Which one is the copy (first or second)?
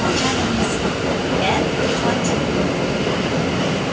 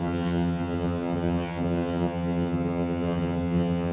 second